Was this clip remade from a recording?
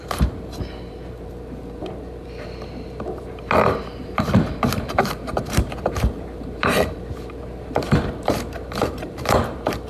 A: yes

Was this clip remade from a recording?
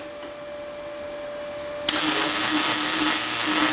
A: no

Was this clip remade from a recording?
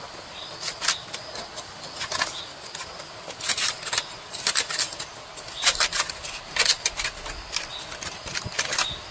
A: no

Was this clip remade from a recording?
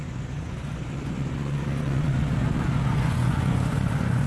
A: yes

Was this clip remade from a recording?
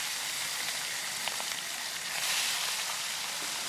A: yes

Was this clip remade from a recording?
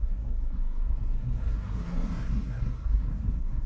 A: yes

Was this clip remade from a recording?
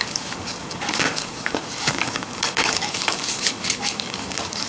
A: yes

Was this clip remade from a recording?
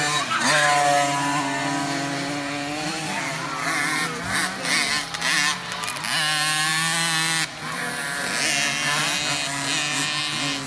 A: no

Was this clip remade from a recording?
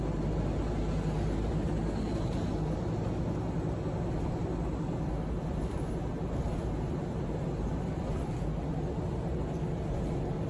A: no